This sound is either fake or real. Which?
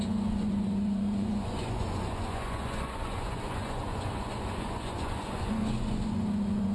fake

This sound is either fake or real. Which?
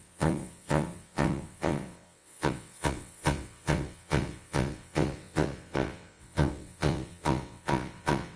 fake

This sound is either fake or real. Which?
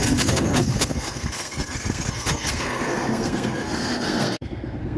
fake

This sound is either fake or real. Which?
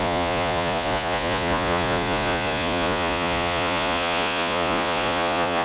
fake